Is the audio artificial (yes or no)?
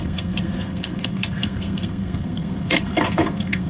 yes